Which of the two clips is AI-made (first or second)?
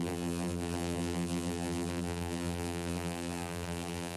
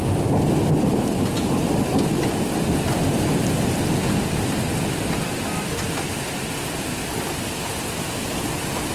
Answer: first